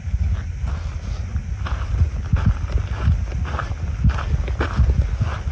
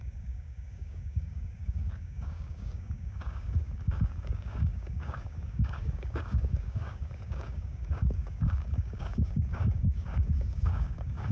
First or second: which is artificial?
second